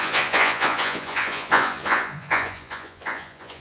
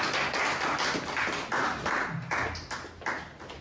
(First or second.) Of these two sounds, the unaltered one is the second